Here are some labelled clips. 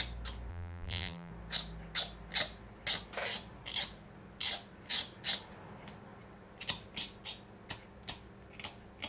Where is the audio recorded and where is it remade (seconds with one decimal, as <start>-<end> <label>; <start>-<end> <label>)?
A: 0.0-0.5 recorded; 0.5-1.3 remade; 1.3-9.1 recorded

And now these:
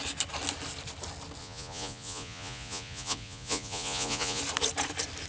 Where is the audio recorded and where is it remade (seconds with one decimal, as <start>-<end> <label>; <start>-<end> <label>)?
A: 0.0-1.4 recorded; 1.4-4.4 remade; 4.4-5.3 recorded

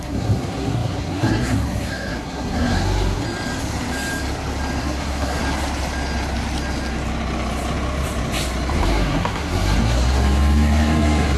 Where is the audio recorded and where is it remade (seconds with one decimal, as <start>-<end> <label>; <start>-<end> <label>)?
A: 0.0-3.2 remade; 3.2-4.8 recorded; 4.8-5.4 remade; 5.4-8.8 recorded; 8.8-11.4 remade